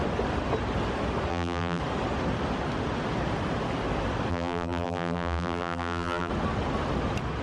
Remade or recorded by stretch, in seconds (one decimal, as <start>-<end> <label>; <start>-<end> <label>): 0.0-1.3 recorded; 1.3-1.8 remade; 1.8-4.3 recorded; 4.3-6.3 remade; 6.3-7.4 recorded